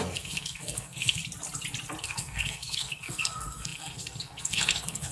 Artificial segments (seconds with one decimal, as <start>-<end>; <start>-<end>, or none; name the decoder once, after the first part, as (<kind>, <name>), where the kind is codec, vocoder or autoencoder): 0.0-1.2 (codec, SNAC); 2.0-5.1